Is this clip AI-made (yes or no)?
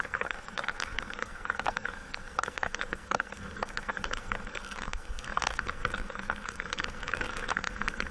yes